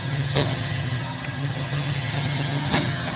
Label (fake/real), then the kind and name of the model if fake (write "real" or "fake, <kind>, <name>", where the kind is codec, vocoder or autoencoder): fake, vocoder, HiFi-GAN